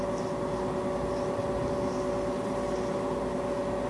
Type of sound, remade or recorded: recorded